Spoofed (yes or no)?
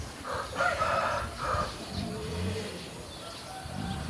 no